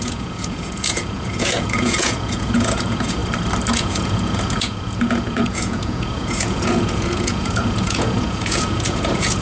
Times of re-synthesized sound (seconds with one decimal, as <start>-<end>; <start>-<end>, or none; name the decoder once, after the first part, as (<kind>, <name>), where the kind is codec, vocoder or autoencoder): 0.0-3.2 (vocoder, Vocos); 3.7-9.4

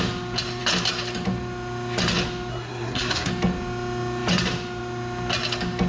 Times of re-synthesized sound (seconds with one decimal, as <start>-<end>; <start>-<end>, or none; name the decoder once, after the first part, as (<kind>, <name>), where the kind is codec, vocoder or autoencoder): 2.5-3.3 (codec, SNAC)

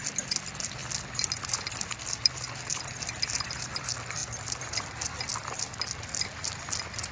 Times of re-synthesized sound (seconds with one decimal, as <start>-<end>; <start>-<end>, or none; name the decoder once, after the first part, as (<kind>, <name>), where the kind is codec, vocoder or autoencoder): 0.0-0.8 (vocoder, BigVGAN v2); 1.7-5.3